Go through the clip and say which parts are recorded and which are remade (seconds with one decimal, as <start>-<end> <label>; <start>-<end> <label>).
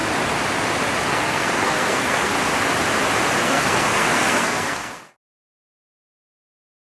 0.0-1.1 recorded; 1.1-2.3 remade; 2.3-3.4 recorded; 3.4-6.9 remade